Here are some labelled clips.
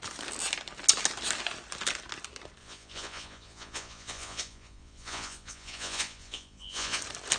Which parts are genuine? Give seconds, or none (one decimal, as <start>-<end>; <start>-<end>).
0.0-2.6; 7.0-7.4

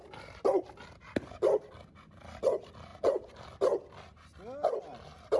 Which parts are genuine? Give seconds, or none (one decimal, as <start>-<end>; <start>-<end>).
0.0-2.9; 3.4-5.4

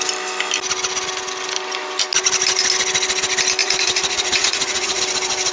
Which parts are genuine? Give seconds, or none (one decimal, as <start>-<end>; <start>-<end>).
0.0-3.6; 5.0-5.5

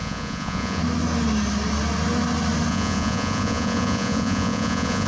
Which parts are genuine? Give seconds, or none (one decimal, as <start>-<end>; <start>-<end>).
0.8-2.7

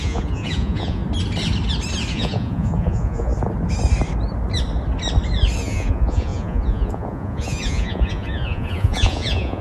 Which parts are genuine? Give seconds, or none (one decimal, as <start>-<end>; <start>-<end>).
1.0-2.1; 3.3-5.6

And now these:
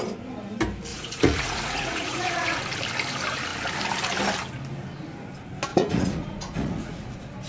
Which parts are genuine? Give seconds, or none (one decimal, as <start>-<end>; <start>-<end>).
0.0-0.9; 2.6-5.7; 7.1-7.5

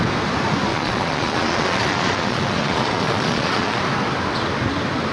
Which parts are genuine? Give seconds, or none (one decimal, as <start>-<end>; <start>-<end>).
0.0-0.7; 3.8-5.1